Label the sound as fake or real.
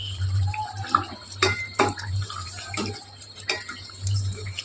fake